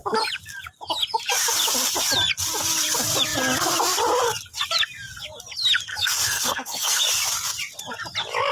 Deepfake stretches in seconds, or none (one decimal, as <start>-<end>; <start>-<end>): 5.9-7.0